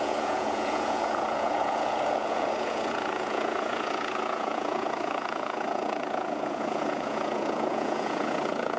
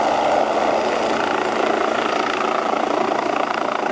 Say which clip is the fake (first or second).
first